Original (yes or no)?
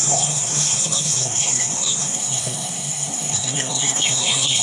no